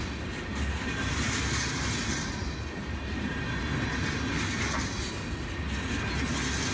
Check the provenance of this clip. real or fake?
real